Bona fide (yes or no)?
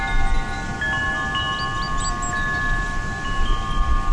yes